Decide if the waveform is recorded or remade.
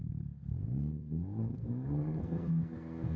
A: remade